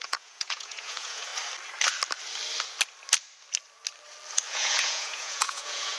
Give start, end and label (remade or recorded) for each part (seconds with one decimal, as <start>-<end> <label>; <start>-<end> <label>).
0.0-1.3 remade; 1.3-4.5 recorded; 4.5-6.0 remade